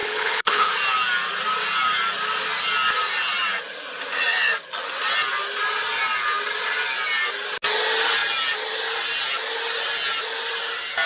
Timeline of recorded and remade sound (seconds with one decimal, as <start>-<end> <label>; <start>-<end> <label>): 0.0-0.7 remade; 0.7-11.1 recorded